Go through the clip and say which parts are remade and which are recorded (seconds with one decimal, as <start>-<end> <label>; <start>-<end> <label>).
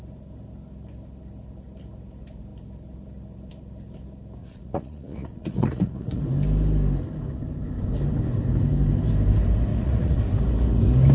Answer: 0.0-4.4 recorded; 4.4-6.2 remade; 6.2-9.7 recorded; 9.7-10.2 remade; 10.2-11.1 recorded